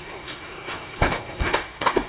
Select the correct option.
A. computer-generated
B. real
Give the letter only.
A